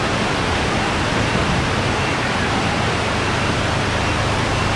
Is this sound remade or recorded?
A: recorded